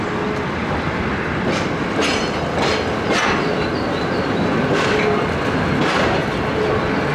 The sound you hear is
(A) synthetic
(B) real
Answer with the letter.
B